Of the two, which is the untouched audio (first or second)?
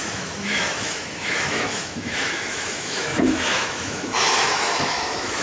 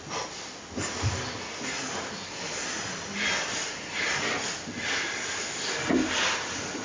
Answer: second